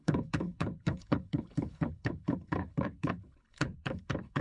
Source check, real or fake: fake